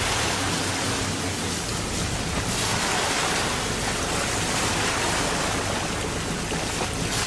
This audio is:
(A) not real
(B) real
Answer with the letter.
B